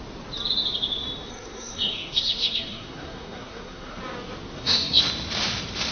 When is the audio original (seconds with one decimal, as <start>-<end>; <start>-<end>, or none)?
0.0-1.3; 4.0-4.5; 5.0-5.9